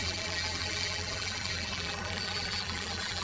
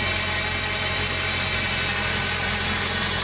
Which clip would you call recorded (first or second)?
second